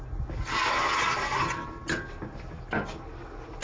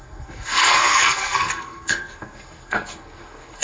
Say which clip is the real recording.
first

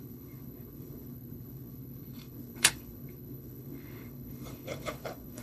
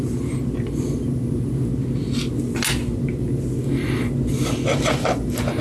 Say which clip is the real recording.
second